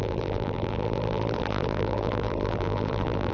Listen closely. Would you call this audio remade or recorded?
remade